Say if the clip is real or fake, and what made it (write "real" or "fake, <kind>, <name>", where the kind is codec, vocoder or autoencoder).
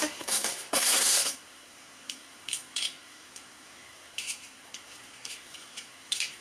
fake, codec, SNAC